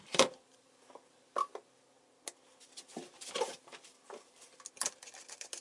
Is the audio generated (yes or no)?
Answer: no